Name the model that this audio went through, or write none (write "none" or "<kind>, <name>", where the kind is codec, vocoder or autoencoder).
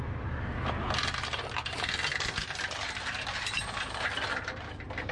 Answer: none